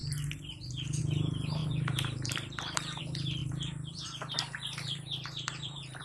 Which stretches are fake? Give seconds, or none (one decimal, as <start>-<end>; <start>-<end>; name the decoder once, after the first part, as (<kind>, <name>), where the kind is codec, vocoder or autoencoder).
1.6-3.0 (vocoder, BigVGAN v2); 3.4-6.0

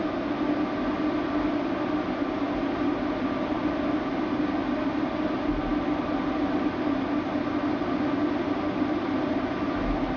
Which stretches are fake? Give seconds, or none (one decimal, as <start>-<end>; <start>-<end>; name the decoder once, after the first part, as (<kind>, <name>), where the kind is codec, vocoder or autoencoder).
none

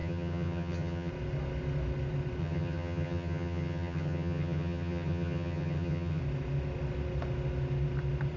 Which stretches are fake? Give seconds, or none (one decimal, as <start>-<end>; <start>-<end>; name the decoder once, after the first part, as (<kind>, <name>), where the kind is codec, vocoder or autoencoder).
0.0-1.1 (vocoder, HiFi-GAN); 2.4-6.2

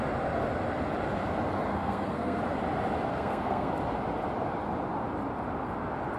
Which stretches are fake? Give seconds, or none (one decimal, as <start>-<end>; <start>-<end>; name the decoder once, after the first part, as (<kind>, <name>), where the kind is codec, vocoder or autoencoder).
1.7-2.4 (codec, SNAC); 3.1-3.7